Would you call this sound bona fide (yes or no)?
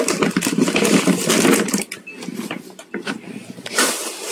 no